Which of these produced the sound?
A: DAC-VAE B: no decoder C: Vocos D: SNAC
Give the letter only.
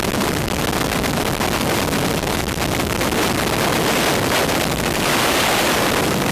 B